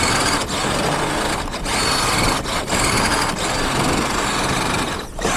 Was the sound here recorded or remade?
recorded